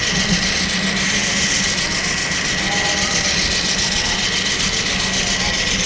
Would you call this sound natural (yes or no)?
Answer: yes